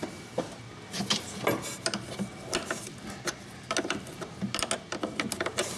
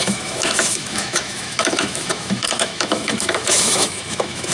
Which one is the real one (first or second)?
first